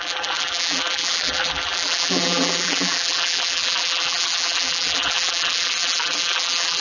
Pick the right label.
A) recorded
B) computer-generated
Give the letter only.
B